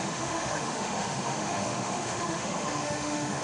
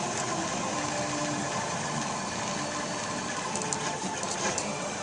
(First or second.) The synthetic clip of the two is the first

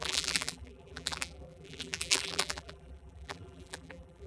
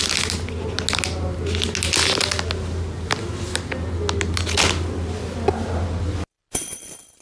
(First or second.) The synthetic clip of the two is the first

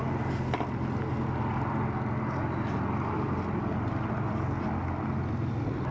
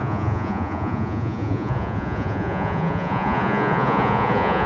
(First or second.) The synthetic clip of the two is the second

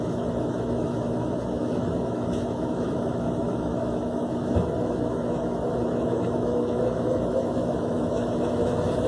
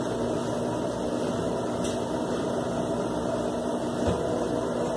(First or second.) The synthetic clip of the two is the first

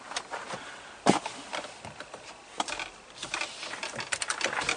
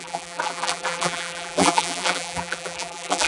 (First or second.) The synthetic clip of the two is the second